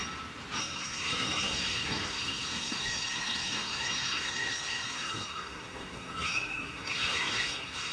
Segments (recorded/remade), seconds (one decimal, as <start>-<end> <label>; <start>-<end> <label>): 0.0-0.6 recorded; 0.6-7.9 remade